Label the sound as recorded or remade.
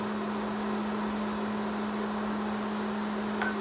recorded